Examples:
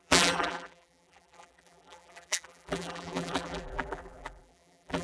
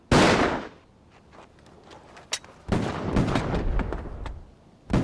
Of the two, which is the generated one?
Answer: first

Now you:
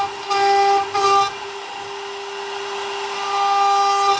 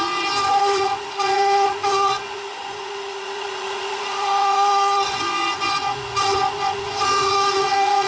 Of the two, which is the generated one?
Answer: second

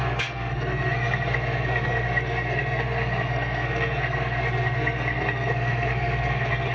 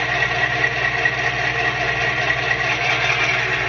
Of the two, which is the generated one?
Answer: first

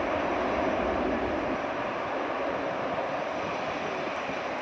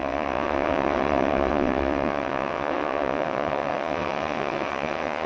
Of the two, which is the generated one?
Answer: second